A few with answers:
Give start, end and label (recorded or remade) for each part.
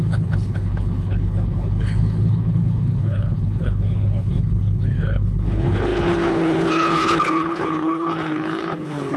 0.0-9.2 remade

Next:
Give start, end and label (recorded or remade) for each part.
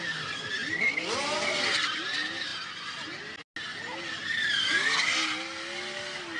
0.0-6.4 recorded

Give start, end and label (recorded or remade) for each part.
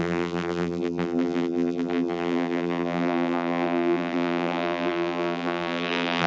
0.0-6.3 remade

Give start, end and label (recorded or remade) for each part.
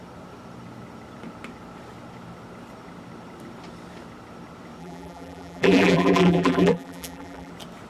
0.0-4.8 recorded; 4.8-7.5 remade; 7.5-7.9 recorded